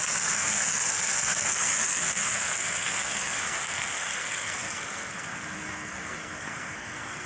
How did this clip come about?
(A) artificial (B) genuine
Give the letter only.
A